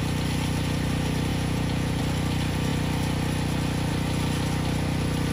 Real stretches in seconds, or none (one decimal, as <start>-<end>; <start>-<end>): 0.0-1.3; 2.0-5.3

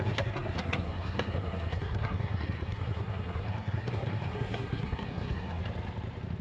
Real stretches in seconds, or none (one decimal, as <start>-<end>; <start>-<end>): 5.6-6.4